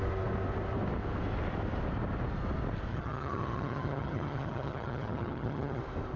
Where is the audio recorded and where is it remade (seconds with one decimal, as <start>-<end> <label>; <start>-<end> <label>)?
0.0-2.9 recorded; 2.9-5.8 remade; 5.8-6.2 recorded